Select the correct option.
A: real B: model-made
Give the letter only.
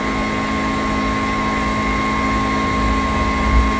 A